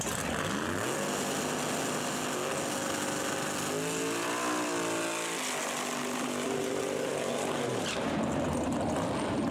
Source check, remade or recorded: recorded